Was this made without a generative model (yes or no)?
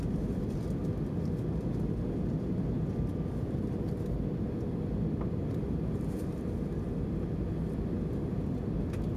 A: yes